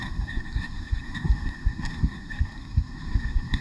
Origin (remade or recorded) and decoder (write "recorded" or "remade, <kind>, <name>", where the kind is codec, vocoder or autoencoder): remade, codec, SNAC